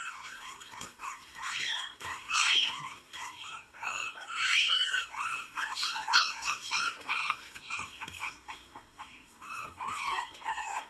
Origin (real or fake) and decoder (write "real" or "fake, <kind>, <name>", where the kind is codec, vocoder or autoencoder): fake, codec, SNAC